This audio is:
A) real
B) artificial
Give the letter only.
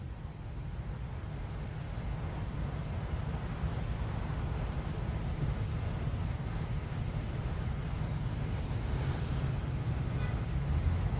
A